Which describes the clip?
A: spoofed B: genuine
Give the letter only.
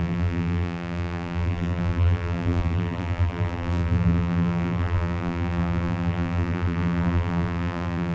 A